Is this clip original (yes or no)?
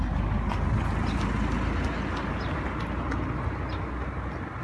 yes